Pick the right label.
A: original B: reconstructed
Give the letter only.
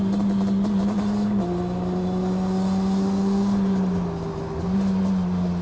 A